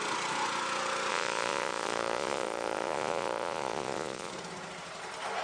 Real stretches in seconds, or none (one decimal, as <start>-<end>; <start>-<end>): 0.0-1.1; 4.3-5.4

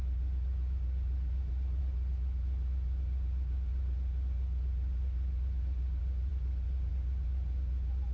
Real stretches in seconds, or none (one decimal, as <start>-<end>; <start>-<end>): 0.0-8.1

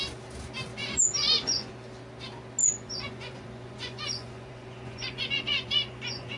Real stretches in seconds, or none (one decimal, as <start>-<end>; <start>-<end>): 0.0-0.7; 1.7-2.6

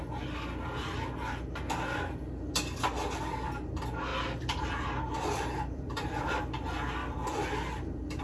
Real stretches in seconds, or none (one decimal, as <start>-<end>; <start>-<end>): 0.0-4.1; 6.4-7.0

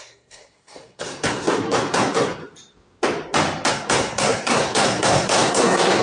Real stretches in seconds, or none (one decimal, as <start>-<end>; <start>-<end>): 2.4-3.7

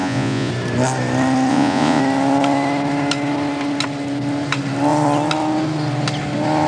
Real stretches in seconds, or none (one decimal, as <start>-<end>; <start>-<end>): 0.5-1.5; 2.0-6.7

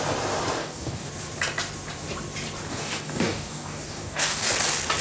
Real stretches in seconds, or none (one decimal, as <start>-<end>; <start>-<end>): 0.0-0.6; 1.1-2.7; 4.5-5.0